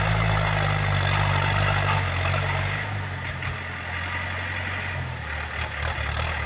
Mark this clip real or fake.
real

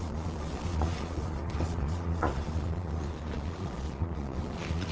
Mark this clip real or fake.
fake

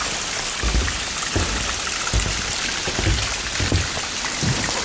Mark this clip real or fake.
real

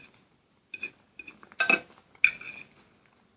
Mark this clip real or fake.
real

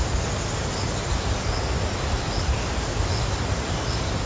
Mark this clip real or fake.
real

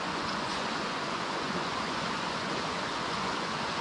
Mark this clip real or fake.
fake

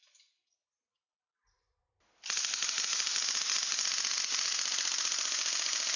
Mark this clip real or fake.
real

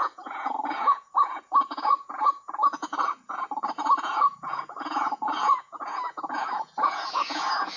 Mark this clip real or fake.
fake